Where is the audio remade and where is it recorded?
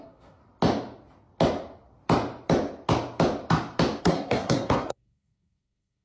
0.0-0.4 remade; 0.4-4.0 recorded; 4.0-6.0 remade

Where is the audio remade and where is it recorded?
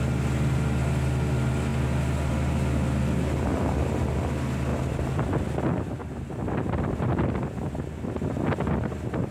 0.0-6.0 recorded; 6.0-7.3 remade; 7.3-9.3 recorded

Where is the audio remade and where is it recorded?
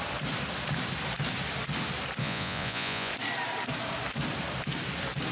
0.0-2.2 recorded; 2.2-3.1 remade; 3.1-5.3 recorded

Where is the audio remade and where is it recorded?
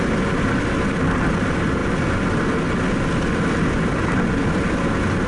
0.0-5.3 recorded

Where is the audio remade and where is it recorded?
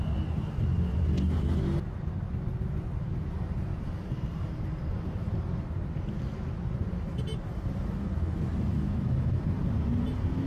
0.0-8.7 recorded; 8.7-9.4 remade; 9.4-10.5 recorded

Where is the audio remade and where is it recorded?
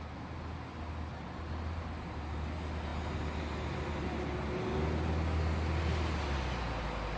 0.0-7.2 recorded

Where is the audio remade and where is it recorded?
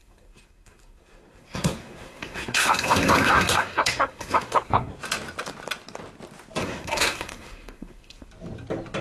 0.0-5.0 remade; 5.0-6.6 recorded; 6.6-8.3 remade; 8.3-9.0 recorded